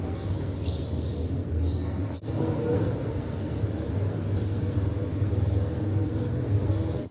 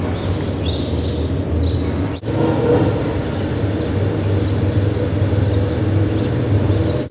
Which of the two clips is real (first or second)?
second